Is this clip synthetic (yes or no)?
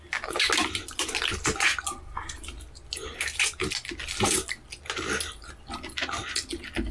no